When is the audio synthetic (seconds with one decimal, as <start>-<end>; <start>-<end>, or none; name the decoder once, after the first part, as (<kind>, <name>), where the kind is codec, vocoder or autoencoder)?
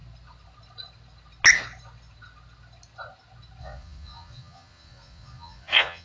3.6-6.0 (vocoder, Vocos)